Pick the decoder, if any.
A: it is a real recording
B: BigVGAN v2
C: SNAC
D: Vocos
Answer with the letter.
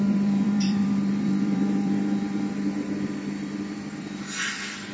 B